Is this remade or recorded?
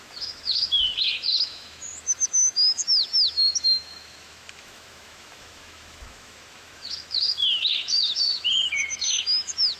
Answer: remade